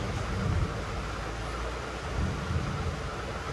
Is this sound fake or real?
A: real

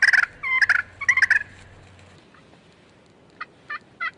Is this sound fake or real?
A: real